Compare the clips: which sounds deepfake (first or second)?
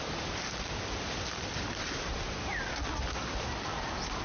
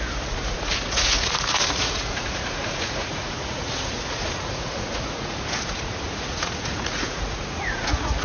second